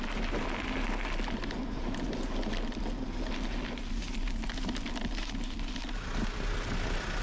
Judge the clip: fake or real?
real